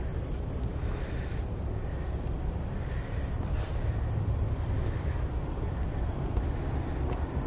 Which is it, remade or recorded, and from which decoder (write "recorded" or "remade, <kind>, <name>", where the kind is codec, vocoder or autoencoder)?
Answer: recorded